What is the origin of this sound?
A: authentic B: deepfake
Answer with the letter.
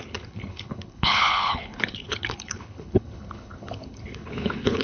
B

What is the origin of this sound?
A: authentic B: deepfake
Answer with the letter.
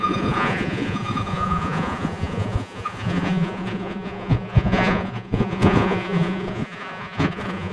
B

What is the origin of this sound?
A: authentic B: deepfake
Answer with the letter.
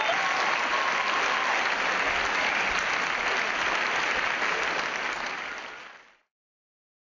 A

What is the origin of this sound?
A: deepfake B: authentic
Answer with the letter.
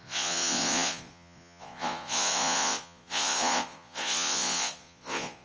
A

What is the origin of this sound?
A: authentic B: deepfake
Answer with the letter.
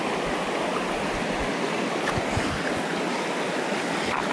A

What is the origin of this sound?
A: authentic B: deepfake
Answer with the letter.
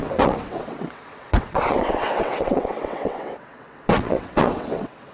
B